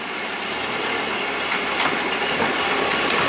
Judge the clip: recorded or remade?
recorded